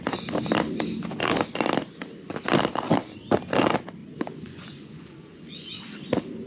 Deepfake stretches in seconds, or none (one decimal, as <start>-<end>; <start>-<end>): 4.0-5.7